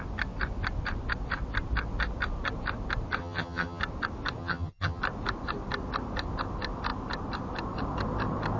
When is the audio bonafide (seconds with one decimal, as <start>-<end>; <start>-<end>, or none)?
0.0-3.2; 3.8-4.4; 5.0-8.6